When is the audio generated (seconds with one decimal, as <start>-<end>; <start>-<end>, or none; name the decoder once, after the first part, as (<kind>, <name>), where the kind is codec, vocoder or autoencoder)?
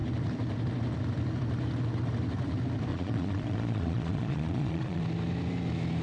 2.9-5.0 (vocoder, Vocos)